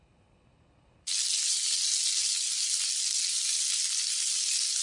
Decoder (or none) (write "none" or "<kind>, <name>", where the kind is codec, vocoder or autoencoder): none